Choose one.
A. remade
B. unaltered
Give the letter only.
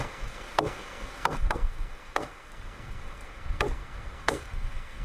A